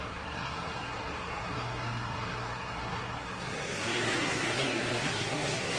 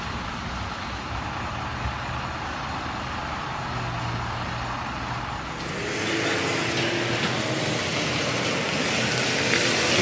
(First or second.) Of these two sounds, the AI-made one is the first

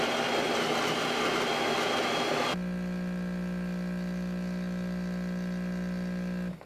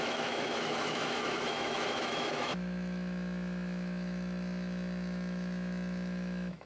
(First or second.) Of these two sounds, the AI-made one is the second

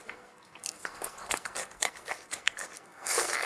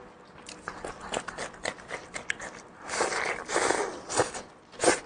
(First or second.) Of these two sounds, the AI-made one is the first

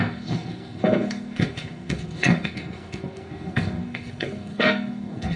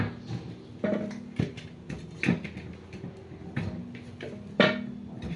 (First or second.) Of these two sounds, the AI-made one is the first